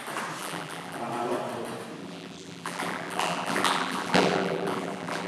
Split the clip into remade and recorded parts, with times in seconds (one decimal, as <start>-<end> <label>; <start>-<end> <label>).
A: 0.0-0.4 recorded; 0.4-1.0 remade; 1.0-2.0 recorded; 2.0-5.3 remade

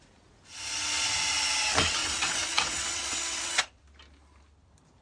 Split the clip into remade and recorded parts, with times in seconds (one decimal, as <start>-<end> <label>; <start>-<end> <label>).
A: 0.0-2.0 recorded; 2.0-3.8 remade; 3.8-5.0 recorded